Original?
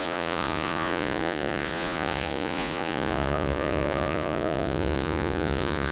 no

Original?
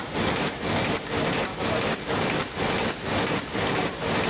yes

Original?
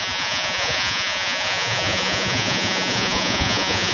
no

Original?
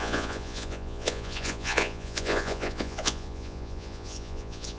no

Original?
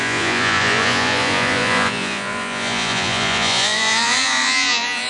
no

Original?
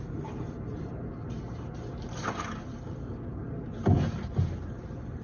yes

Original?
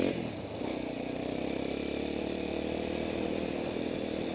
yes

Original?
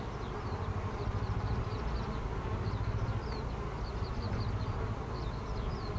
yes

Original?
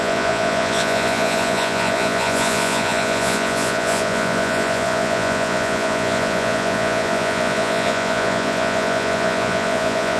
no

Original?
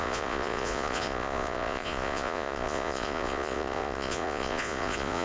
no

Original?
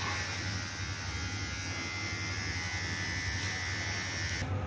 yes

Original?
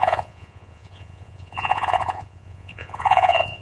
no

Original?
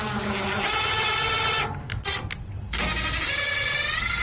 yes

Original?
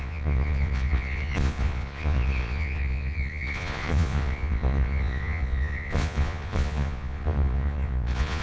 no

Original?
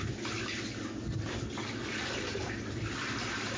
yes